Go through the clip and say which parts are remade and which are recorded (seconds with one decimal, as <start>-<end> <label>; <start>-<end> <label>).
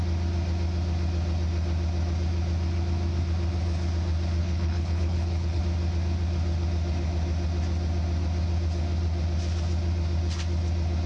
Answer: 0.0-4.4 recorded; 4.4-5.6 remade; 5.6-11.1 recorded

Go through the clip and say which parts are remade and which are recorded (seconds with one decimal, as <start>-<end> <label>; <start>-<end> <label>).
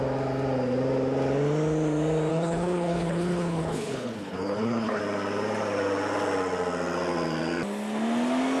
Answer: 0.0-2.3 recorded; 2.3-5.0 remade; 5.0-8.6 recorded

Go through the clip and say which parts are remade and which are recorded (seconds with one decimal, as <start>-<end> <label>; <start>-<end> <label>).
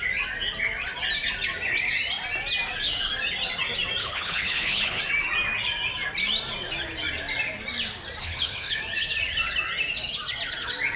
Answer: 0.0-4.0 recorded; 4.0-5.0 remade; 5.0-8.2 recorded; 8.2-8.8 remade; 8.8-11.0 recorded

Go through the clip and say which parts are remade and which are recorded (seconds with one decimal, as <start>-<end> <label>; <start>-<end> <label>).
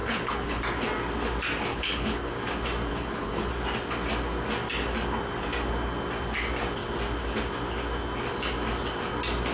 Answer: 0.0-0.6 remade; 0.6-1.7 recorded; 1.7-2.3 remade; 2.3-2.9 recorded; 2.9-3.5 remade; 3.5-9.5 recorded